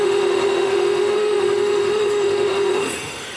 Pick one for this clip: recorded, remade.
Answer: remade